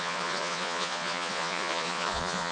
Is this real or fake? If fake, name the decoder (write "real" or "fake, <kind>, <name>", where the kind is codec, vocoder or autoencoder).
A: fake, vocoder, Vocos